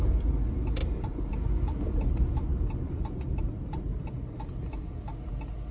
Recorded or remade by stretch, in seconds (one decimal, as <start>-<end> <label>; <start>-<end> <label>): 0.0-0.8 recorded; 0.8-1.3 remade; 1.3-2.5 recorded; 2.5-4.1 remade; 4.1-5.7 recorded